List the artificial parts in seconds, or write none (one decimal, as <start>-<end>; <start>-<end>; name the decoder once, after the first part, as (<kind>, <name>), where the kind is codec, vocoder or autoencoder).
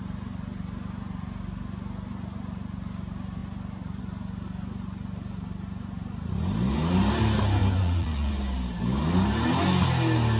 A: 7.6-8.3 (vocoder, Vocos)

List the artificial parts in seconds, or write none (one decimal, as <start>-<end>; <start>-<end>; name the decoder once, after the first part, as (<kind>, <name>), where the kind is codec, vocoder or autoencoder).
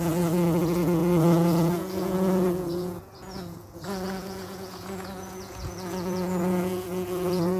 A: 0.0-7.6 (vocoder, Vocos)